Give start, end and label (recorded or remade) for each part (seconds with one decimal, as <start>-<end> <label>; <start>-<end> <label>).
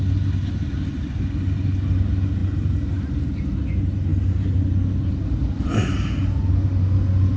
0.0-4.1 recorded; 4.1-4.7 remade; 4.7-5.4 recorded; 5.4-6.0 remade; 6.0-7.4 recorded